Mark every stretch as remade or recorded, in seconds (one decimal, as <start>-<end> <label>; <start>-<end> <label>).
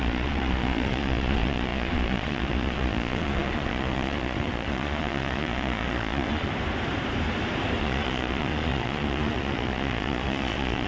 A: 0.0-6.5 remade; 6.5-7.8 recorded; 7.8-10.9 remade